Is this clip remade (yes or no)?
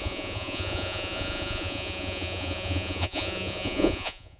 yes